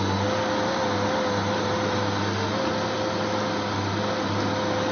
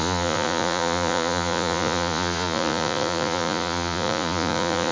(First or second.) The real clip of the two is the first